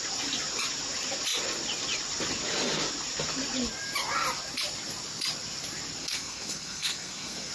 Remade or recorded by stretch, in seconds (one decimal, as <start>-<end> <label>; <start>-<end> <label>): 0.0-6.0 recorded; 6.0-7.5 remade